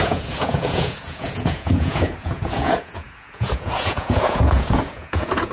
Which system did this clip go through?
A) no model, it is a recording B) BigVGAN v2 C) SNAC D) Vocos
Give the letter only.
D